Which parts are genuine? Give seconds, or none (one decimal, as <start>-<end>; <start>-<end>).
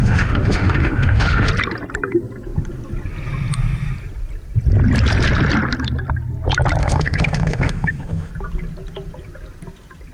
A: 1.5-6.8; 8.3-10.1